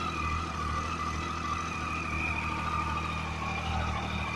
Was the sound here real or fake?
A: real